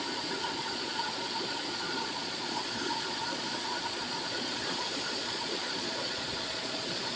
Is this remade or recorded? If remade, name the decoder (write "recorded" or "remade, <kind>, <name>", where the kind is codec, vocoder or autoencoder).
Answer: remade, vocoder, Vocos